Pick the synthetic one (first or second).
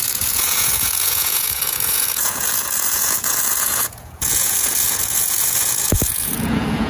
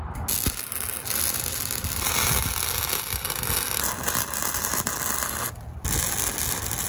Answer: first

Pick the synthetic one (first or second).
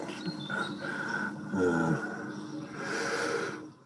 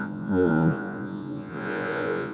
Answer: second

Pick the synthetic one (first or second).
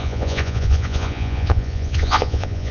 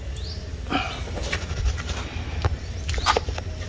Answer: first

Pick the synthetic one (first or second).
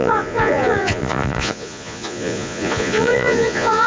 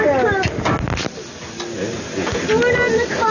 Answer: first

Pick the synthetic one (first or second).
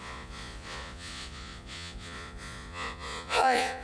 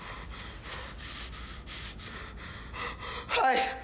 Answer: first